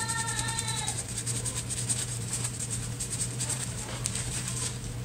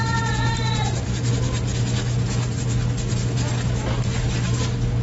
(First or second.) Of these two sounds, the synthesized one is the first